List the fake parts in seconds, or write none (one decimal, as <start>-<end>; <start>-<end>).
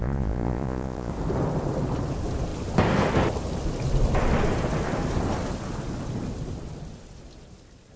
0.0-1.1